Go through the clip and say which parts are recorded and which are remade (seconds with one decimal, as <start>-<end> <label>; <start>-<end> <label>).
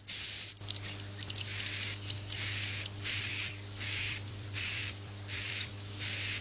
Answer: 0.0-3.3 recorded; 3.3-5.7 remade; 5.7-6.4 recorded